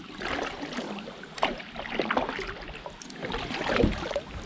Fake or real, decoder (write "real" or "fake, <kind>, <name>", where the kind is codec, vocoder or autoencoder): real